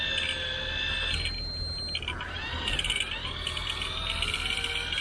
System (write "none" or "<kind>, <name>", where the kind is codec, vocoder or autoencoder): none